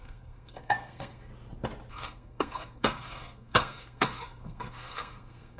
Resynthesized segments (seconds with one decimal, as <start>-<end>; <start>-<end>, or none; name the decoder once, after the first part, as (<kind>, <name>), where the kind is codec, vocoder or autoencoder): 0.0-1.3 (codec, SNAC); 1.9-5.6

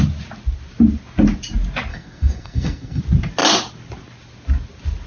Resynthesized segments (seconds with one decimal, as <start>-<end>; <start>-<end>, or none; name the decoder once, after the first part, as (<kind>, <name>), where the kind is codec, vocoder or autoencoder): 1.9-3.0 (codec, SNAC)

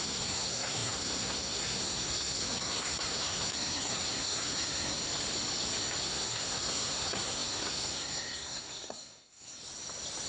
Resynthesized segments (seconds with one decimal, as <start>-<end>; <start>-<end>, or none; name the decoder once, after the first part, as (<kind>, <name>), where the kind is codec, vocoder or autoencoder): 0.0-5.0 (codec, SNAC); 6.0-9.6

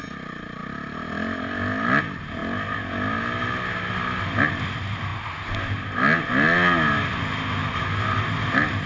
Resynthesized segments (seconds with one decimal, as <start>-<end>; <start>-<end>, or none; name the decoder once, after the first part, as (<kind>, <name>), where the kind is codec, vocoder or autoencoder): none

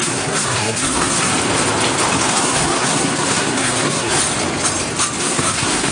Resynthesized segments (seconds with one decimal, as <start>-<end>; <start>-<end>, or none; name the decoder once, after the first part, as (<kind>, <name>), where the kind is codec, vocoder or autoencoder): 0.0-1.3 (codec, SNAC); 2.3-4.2; 5.2-5.9